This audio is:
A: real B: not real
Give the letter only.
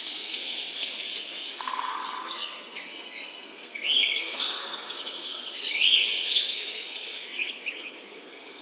B